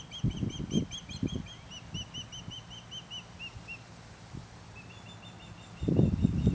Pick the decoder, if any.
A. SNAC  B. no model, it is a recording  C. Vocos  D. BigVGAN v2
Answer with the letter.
B